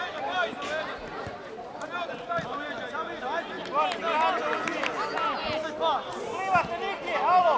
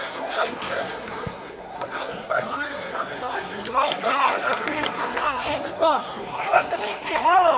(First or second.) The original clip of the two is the first